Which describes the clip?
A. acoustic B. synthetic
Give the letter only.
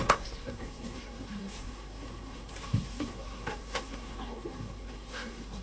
B